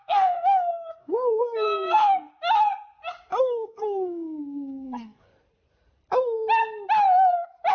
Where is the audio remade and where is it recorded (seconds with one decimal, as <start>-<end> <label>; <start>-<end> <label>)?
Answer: 0.0-2.3 remade; 2.3-3.4 recorded; 3.4-5.3 remade; 5.3-7.7 recorded